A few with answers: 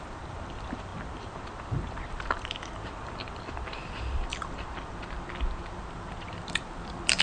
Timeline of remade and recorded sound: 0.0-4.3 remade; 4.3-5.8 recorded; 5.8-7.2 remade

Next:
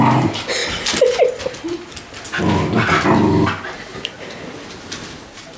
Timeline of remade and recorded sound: 0.0-3.9 recorded; 3.9-5.6 remade

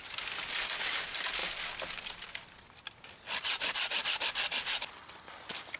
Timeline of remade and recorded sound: 0.0-5.8 recorded

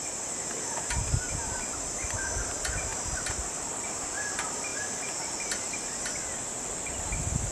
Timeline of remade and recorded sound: 0.0-2.9 remade; 2.9-3.8 recorded; 3.8-4.7 remade; 4.7-7.0 recorded; 7.0-7.5 remade

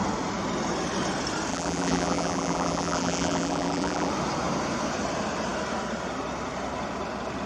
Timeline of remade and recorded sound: 0.0-1.5 recorded; 1.5-4.1 remade; 4.1-7.5 recorded